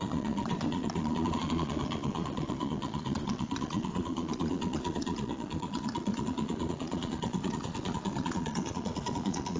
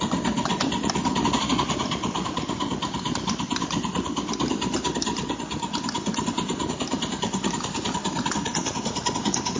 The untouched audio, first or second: second